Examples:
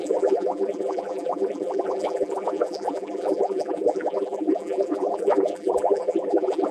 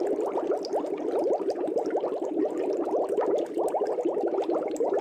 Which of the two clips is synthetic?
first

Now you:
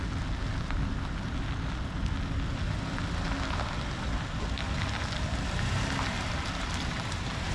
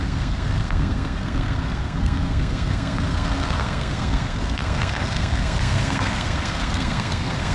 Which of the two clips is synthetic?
second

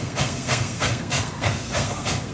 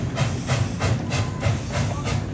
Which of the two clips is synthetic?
first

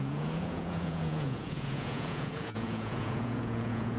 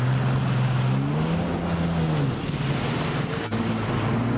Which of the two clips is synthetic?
first